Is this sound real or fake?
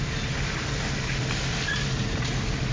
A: real